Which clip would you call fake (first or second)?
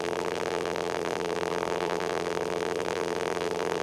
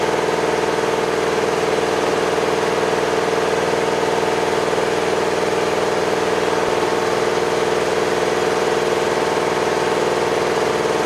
first